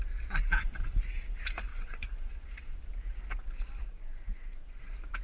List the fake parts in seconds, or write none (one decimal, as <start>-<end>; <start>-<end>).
1.7-2.8; 3.9-4.8